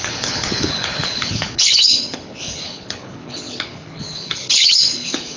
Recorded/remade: remade